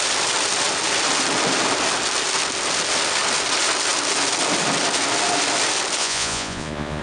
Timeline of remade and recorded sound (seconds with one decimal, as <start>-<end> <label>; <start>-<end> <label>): 0.0-6.0 recorded; 6.0-7.0 remade